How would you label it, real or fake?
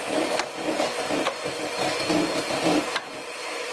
real